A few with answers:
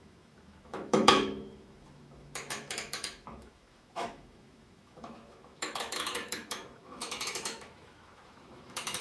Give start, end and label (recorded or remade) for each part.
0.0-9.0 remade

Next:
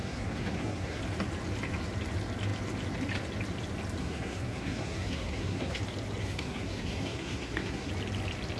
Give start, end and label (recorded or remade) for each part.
0.0-1.0 remade; 1.0-4.0 recorded; 4.0-5.8 remade; 5.8-6.2 recorded; 6.2-7.9 remade; 7.9-8.6 recorded